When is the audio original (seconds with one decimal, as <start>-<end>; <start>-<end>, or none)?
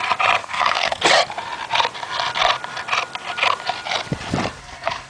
0.0-0.4; 1.0-4.6